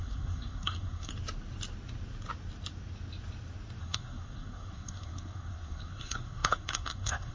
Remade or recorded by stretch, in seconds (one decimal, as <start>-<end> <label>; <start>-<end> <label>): 0.0-1.1 remade; 1.1-3.8 recorded; 3.8-7.3 remade